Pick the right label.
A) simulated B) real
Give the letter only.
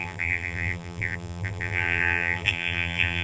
A